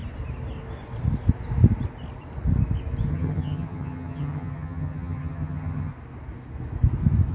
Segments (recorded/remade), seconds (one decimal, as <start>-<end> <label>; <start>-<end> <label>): 0.0-3.1 recorded; 3.1-5.9 remade; 5.9-7.3 recorded